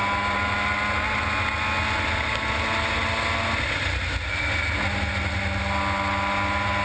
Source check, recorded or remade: recorded